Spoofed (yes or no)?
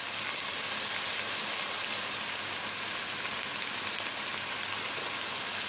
no